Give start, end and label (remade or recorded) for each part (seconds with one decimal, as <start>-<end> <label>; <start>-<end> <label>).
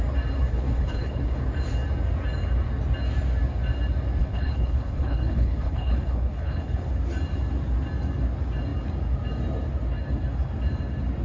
0.0-0.5 recorded; 0.5-1.4 remade; 1.4-4.2 recorded; 4.2-6.9 remade; 6.9-11.2 recorded